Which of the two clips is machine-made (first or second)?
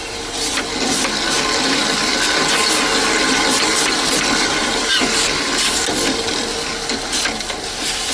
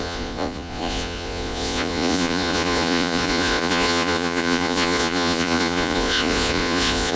second